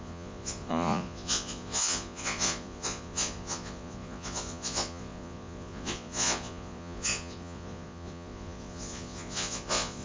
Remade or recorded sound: remade